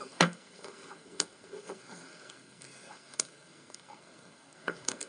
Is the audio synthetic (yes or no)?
yes